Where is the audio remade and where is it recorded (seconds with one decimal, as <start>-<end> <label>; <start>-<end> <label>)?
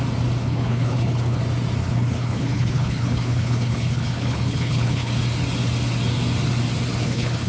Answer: 0.0-0.4 recorded; 0.4-1.4 remade; 1.4-1.8 recorded; 1.8-5.1 remade; 5.1-7.0 recorded; 7.0-7.5 remade